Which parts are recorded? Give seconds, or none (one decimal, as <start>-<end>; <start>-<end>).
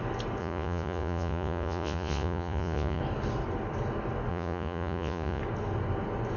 0.0-0.4; 3.0-4.3; 5.4-6.4